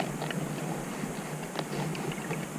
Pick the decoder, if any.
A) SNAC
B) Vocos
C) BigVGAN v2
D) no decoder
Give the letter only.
D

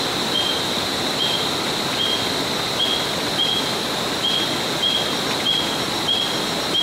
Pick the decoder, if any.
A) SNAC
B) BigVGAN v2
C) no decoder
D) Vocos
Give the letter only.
C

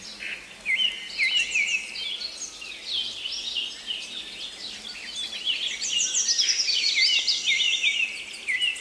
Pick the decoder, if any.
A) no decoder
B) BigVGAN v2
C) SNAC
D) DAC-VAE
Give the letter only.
A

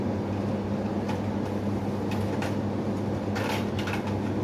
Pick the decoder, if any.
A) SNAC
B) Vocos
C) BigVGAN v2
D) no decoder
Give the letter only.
D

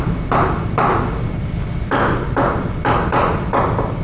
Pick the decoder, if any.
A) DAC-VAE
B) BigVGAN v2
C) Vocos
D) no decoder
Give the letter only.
D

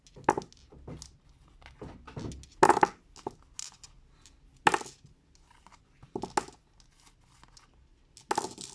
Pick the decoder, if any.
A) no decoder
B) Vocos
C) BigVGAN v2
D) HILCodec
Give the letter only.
A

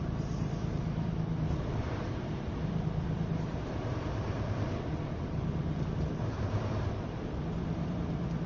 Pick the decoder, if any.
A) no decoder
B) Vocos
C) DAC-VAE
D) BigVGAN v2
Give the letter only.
D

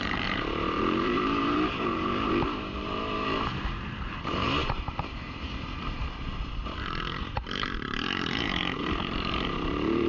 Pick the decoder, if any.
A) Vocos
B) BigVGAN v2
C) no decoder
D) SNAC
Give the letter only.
B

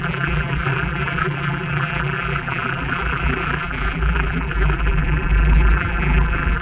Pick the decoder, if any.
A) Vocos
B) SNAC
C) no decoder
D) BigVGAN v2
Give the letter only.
D